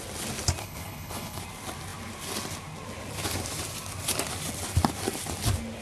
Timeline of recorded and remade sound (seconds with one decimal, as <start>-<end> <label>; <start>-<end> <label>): 0.0-0.6 recorded; 0.6-1.4 remade; 1.4-5.8 recorded